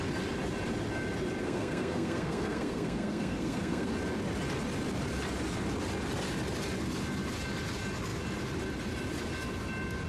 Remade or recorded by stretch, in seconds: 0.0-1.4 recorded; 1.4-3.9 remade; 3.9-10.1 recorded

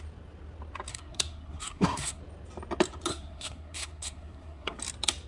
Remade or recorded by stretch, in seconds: 0.0-0.9 recorded; 0.9-2.2 remade; 2.2-3.1 recorded; 3.1-4.8 remade; 4.8-5.3 recorded

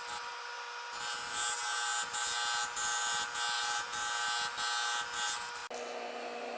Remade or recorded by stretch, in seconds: 0.0-6.6 recorded

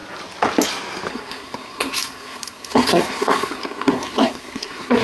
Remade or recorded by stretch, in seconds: 0.0-1.1 recorded; 1.1-5.0 remade

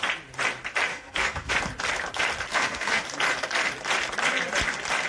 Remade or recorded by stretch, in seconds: 0.0-0.9 recorded; 0.9-1.5 remade; 1.5-2.5 recorded; 2.5-3.0 remade; 3.0-5.1 recorded

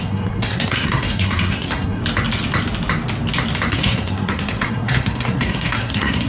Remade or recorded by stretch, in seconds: 0.0-2.0 remade; 2.0-3.7 recorded; 3.7-6.3 remade